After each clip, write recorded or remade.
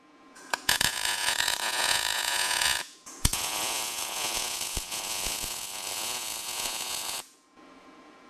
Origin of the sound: remade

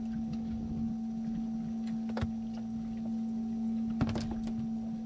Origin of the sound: recorded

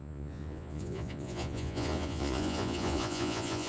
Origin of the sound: remade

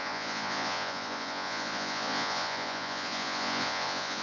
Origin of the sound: remade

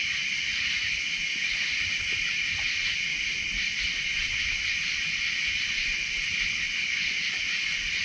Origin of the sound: recorded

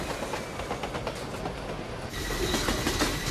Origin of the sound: recorded